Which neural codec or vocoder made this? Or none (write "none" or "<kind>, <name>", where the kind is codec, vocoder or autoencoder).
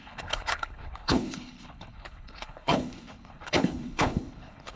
codec, HILCodec